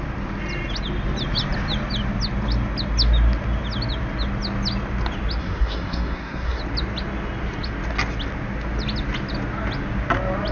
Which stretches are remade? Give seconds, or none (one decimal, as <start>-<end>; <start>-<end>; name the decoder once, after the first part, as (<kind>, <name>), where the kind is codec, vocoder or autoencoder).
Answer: 5.4-6.6 (codec, SNAC)